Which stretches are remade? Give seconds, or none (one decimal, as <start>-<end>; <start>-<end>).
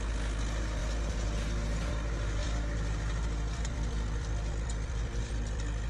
2.4-5.9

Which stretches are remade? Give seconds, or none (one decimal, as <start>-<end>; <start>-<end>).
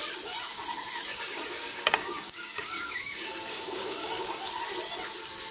1.1-4.4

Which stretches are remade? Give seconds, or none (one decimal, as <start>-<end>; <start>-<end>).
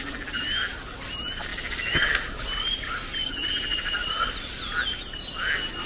3.7-4.3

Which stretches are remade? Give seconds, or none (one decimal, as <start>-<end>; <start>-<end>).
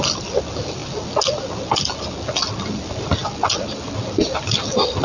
none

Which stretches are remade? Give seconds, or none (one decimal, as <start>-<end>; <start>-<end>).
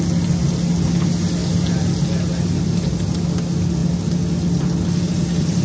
none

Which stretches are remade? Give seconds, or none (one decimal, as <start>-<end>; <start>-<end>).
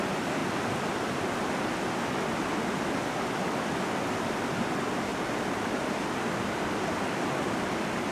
none